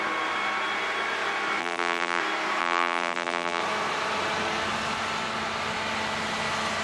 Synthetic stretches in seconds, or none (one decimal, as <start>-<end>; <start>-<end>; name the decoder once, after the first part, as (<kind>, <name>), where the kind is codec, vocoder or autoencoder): 1.6-2.2 (vocoder, BigVGAN v2); 2.6-3.6